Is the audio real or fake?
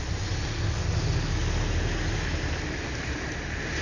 real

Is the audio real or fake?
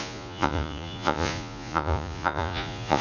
fake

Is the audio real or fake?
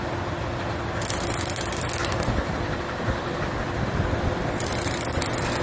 real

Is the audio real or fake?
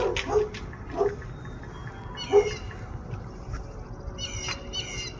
real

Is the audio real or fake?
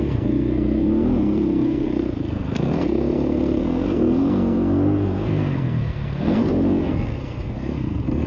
fake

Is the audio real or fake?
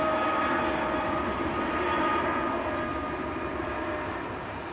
real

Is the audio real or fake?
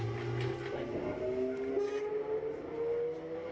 real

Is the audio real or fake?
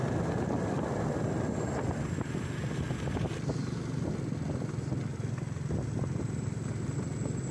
real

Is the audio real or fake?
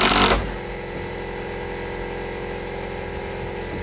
real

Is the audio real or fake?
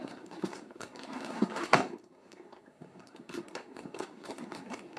fake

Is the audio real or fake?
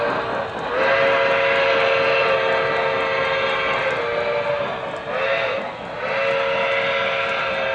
real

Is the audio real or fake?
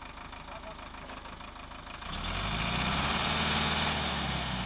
real